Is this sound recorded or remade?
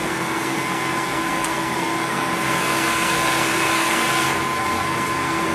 remade